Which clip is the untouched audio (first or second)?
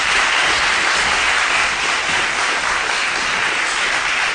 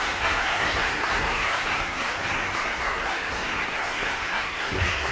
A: first